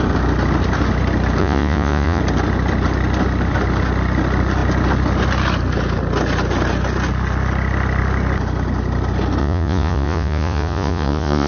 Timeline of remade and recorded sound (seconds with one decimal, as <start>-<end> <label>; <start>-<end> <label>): 0.0-1.4 recorded; 1.4-2.2 remade; 2.2-9.4 recorded; 9.4-11.5 remade